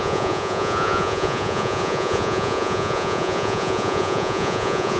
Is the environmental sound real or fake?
fake